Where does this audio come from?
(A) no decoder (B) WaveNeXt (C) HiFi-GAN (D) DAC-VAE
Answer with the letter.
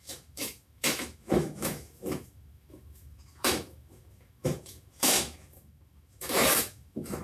D